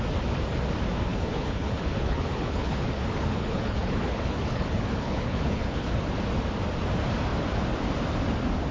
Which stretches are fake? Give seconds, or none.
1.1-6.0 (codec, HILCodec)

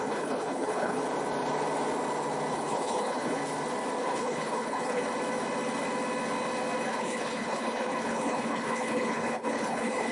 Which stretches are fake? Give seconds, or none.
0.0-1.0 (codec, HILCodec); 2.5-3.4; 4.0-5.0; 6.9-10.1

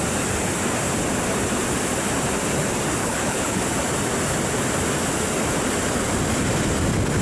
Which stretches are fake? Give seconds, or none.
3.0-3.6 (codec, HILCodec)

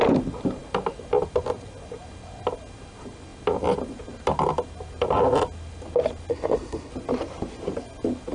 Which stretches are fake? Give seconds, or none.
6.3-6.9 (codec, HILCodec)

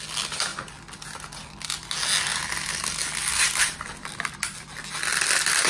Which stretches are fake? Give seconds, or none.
none

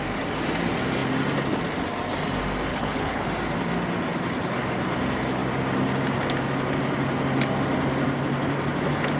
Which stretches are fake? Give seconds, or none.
2.7-3.3 (codec, HILCodec)

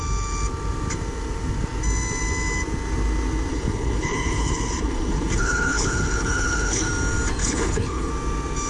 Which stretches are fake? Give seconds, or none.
3.5-6.9 (codec, HILCodec); 7.4-8.1

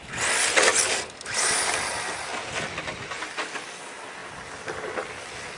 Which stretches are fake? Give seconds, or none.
none